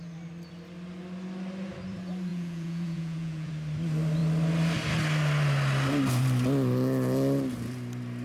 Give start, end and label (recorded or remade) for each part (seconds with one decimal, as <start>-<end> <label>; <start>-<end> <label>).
0.0-2.3 recorded; 2.3-3.5 remade; 3.5-8.2 recorded